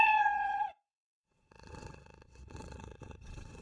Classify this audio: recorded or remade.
remade